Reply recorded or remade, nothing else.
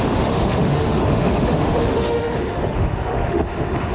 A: remade